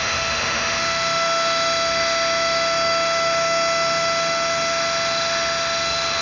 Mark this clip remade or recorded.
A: remade